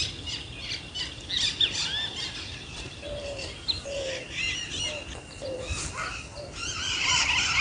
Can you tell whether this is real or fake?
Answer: real